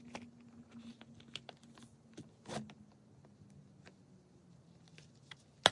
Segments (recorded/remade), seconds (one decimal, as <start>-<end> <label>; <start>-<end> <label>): 0.0-5.7 recorded